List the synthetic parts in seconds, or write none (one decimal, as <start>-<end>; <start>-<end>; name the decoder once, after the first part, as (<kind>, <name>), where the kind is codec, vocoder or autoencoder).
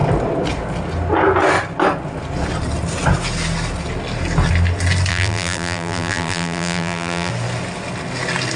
5.1-7.3 (vocoder, BigVGAN v2)